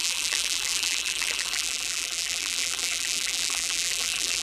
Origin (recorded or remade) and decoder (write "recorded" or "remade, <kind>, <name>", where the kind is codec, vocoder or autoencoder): remade, vocoder, BigVGAN v2